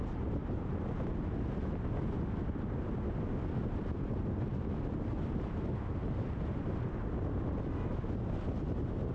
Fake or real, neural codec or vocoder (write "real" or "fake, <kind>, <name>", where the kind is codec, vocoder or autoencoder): real